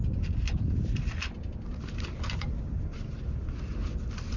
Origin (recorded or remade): recorded